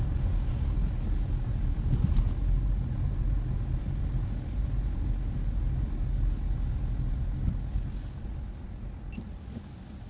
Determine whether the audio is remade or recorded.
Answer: recorded